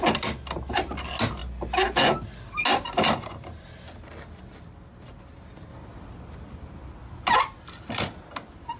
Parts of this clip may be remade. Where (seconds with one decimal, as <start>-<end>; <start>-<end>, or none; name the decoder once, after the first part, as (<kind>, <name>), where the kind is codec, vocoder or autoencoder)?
none